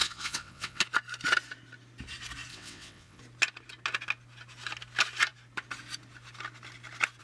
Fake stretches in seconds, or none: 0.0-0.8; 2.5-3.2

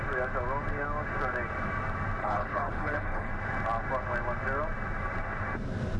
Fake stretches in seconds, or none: 2.2-3.3

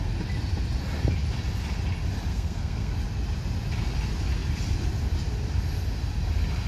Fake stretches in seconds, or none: 2.3-2.9

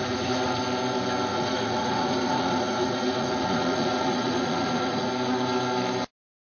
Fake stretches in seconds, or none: 0.0-0.6; 1.3-5.1

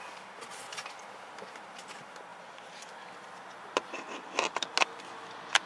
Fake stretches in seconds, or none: 2.3-4.3

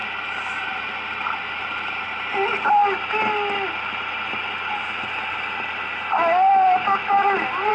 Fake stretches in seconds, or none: none